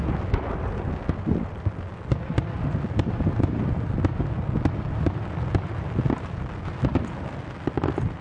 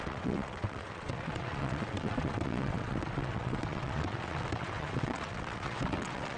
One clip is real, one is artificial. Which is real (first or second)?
first